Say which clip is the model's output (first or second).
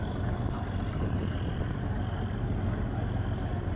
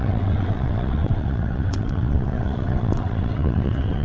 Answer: second